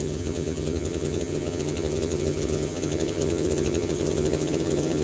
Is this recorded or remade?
remade